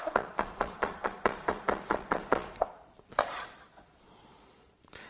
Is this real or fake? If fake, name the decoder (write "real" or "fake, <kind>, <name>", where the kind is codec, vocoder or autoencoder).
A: fake, vocoder, Vocos